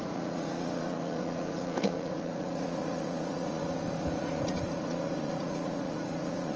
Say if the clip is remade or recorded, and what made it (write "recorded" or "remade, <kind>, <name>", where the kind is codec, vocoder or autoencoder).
remade, vocoder, Vocos